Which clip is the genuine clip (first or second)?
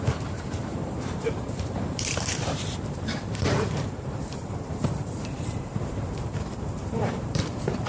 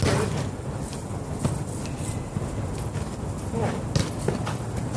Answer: second